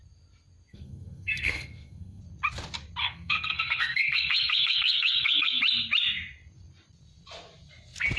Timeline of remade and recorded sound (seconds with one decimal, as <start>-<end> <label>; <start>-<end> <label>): 0.0-0.7 recorded; 0.7-2.2 remade; 2.2-3.0 recorded; 3.0-5.6 remade; 5.6-8.2 recorded